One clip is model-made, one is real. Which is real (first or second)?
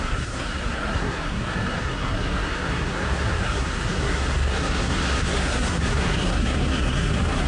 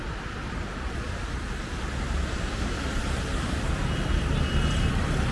second